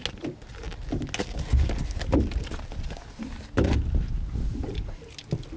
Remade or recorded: recorded